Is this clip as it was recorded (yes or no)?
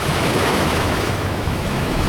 no